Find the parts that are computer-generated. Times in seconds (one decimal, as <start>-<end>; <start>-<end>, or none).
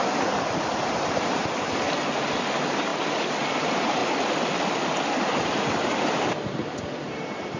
0.0-2.9; 3.6-4.0; 5.1-7.6